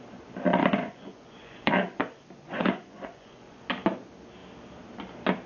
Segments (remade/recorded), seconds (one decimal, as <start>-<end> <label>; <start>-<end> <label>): 0.0-0.6 recorded; 0.6-1.7 remade; 1.7-2.4 recorded; 2.4-3.6 remade; 3.6-5.5 recorded